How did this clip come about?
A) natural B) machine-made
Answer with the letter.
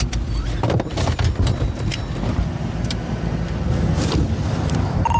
B